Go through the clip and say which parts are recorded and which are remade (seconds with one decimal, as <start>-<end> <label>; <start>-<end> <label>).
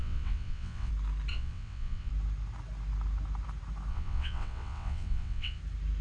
0.0-0.9 remade; 0.9-1.3 recorded; 1.3-2.1 remade; 2.1-3.9 recorded; 3.9-5.6 remade; 5.6-6.0 recorded